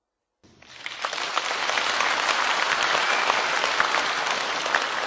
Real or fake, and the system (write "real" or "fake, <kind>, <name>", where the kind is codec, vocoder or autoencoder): fake, vocoder, BigVGAN v2